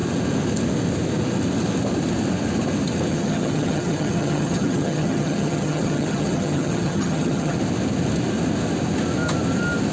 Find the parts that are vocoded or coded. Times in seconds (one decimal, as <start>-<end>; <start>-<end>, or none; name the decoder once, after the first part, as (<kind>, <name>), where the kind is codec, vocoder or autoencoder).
3.1-7.6 (vocoder, HiFi-GAN)